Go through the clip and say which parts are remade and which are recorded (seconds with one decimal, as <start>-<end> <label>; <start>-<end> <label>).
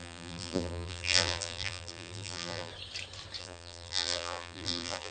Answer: 0.0-2.7 remade; 2.7-3.4 recorded; 3.4-5.1 remade